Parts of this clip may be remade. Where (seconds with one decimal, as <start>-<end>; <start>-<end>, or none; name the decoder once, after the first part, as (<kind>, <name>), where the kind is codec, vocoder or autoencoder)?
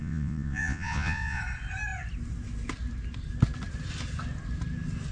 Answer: 0.0-1.4 (vocoder, Vocos)